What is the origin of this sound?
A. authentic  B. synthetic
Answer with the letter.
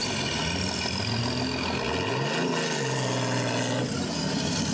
A